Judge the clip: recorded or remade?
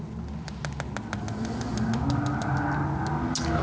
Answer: recorded